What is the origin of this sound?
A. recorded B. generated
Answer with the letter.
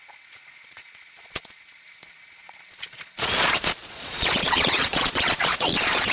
B